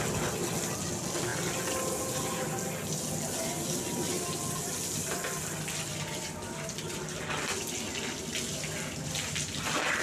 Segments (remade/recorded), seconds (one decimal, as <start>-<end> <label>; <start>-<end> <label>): 0.0-10.0 recorded